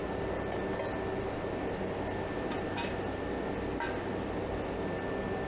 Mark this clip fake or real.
real